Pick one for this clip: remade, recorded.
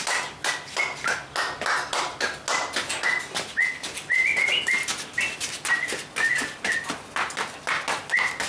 recorded